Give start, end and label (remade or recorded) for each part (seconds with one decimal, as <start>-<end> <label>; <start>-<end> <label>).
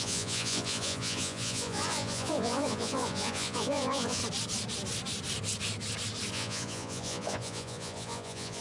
0.0-4.2 remade; 4.2-6.3 recorded; 6.3-8.6 remade